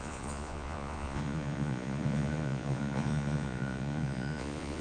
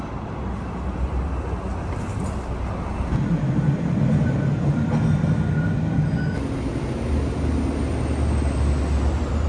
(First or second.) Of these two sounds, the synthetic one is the first